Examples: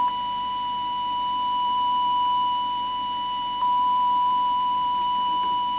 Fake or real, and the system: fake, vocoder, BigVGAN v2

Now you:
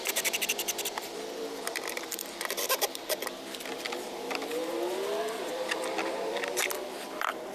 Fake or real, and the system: fake, vocoder, BigVGAN v2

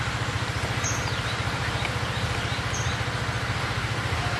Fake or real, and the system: real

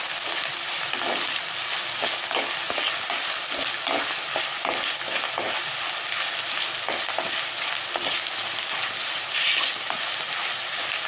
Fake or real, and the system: real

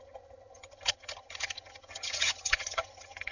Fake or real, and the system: fake, vocoder, HiFi-GAN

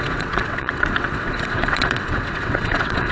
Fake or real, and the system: fake, vocoder, WaveNeXt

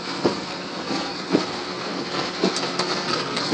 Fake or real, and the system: fake, codec, SNAC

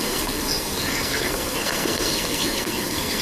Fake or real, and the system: fake, codec, SNAC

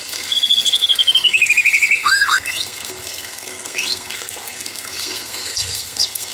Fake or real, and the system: fake, codec, SNAC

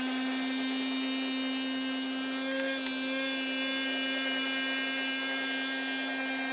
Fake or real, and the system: real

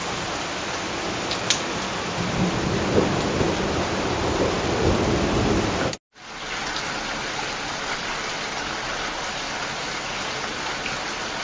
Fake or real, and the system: real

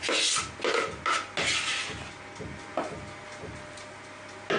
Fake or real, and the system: real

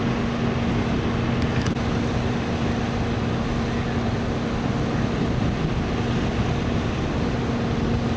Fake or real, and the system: real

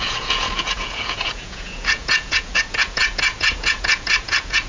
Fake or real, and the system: fake, vocoder, Vocos